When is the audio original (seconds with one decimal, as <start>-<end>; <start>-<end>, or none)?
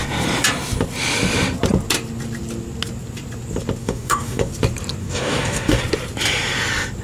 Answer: 0.0-3.8; 4.5-5.0; 5.8-7.0